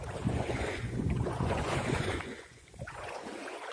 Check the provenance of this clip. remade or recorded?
remade